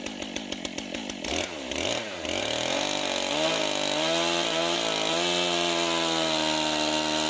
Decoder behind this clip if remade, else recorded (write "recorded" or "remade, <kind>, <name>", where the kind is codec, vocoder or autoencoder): recorded